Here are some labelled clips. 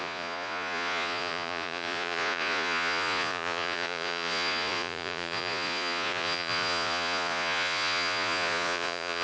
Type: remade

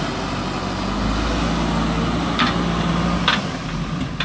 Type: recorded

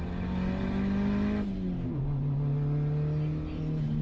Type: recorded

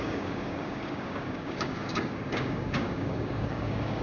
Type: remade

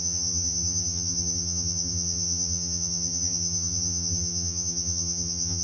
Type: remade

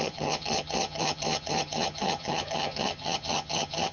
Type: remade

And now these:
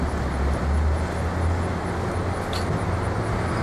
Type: recorded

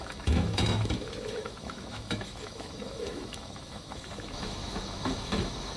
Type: remade